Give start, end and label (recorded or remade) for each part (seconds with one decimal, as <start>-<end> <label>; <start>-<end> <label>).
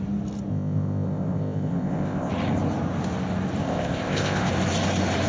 0.0-0.5 recorded; 0.5-2.3 remade; 2.3-3.6 recorded; 3.6-4.5 remade; 4.5-5.3 recorded